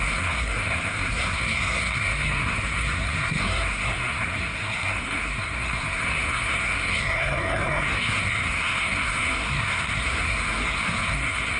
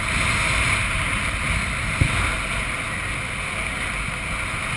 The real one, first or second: second